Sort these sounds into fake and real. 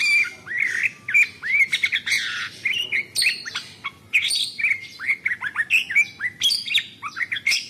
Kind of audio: real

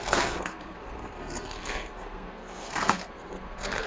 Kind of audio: fake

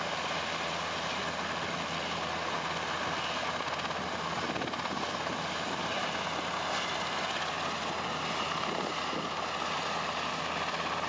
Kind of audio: real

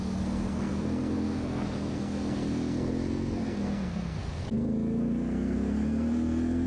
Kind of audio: fake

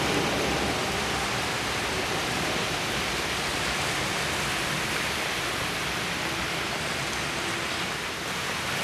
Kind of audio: real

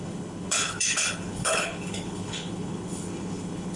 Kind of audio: fake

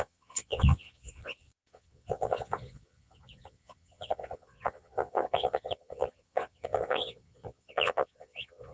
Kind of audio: fake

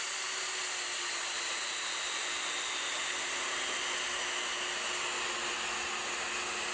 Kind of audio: real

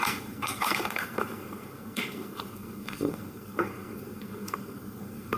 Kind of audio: fake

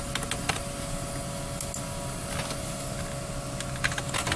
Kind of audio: real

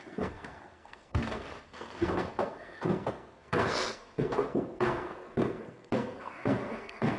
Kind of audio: fake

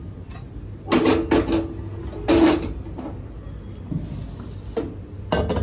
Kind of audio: real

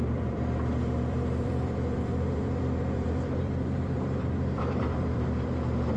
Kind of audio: fake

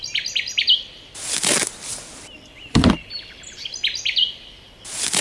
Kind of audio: real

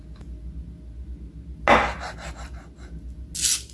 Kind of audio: real